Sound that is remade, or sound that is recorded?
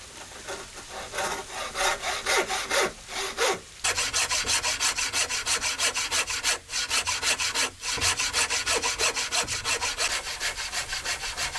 recorded